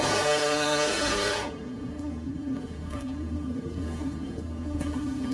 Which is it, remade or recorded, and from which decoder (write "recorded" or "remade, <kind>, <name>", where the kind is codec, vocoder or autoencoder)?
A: remade, codec, SNAC